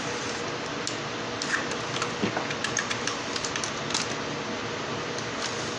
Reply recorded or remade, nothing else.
recorded